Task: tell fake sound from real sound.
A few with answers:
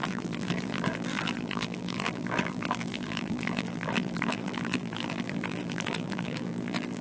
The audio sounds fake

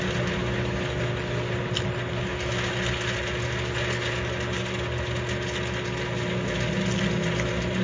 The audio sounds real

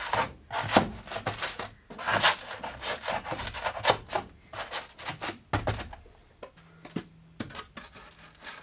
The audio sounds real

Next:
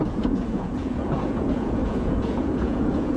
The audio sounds fake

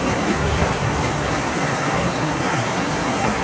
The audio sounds fake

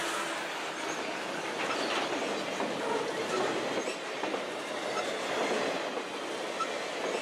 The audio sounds real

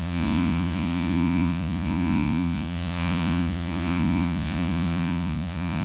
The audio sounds fake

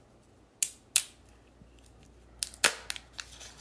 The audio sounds real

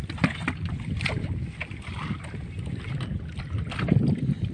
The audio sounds real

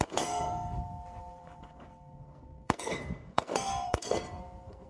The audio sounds fake